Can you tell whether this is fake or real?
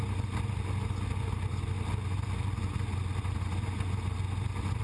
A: real